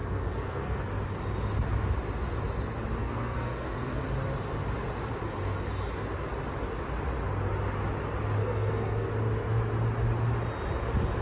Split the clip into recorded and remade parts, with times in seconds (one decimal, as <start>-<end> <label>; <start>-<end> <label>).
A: 0.0-0.8 remade; 0.8-3.0 recorded; 3.0-4.0 remade; 4.0-8.4 recorded; 8.4-9.1 remade; 9.1-11.2 recorded